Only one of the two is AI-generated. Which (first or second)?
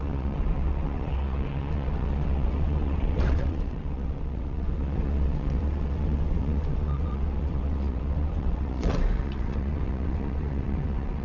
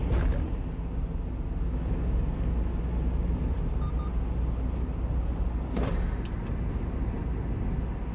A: first